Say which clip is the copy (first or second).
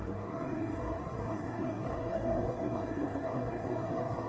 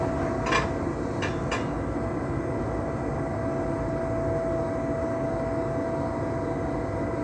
first